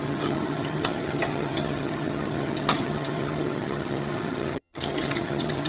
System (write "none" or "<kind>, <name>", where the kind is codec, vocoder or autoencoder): vocoder, HiFi-GAN